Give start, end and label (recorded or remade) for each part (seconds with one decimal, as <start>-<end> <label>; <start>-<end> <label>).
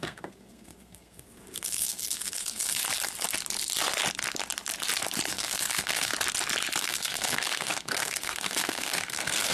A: 0.0-2.8 remade; 2.8-5.3 recorded; 5.3-6.1 remade; 6.1-6.8 recorded; 6.8-9.5 remade